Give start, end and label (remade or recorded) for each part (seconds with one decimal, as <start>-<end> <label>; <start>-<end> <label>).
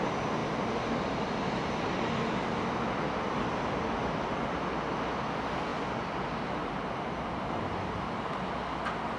0.0-0.4 recorded; 0.4-1.6 remade; 1.6-9.2 recorded